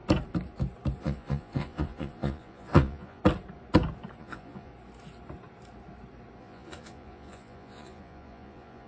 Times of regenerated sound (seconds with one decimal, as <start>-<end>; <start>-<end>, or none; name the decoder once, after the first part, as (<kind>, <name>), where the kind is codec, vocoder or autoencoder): 1.0-3.2 (vocoder, Vocos); 4.2-4.7; 6.4-8.9